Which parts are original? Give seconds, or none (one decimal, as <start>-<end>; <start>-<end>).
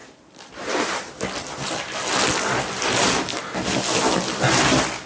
1.3-5.1